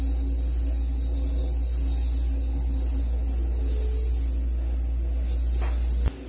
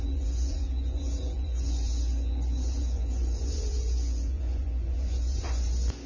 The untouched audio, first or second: first